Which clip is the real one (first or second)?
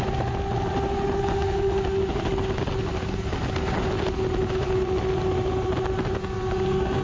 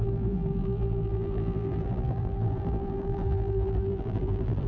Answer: first